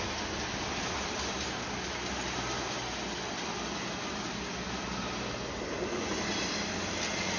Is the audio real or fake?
real